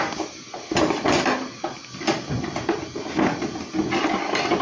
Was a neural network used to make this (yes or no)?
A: no